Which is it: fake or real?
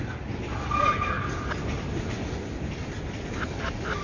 real